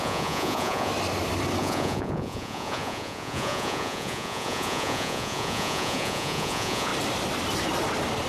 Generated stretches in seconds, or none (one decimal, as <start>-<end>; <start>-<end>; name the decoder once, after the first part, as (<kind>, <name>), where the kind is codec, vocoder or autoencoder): 0.0-0.9 (vocoder, Vocos); 1.6-6.9